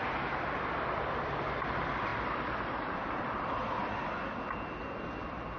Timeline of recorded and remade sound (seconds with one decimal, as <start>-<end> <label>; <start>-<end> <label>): 0.0-5.6 recorded